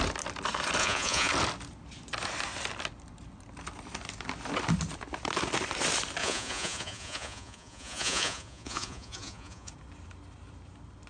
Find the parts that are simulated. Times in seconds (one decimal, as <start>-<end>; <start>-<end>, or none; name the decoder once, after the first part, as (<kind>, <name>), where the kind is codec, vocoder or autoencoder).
0.8-1.3 (vocoder, Vocos); 6.2-9.7